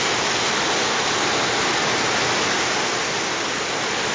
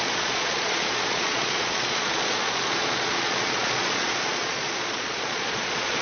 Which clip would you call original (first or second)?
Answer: first